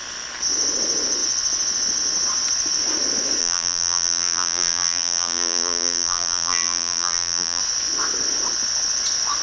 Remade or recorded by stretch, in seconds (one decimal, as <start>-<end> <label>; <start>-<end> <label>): 0.0-3.4 recorded; 3.4-7.6 remade; 7.6-9.4 recorded